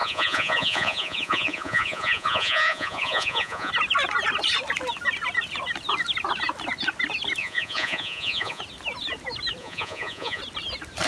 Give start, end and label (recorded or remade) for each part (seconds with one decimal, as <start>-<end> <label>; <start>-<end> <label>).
0.0-3.7 remade; 3.7-7.4 recorded; 7.4-8.6 remade; 8.6-9.6 recorded; 9.6-10.4 remade; 10.4-11.1 recorded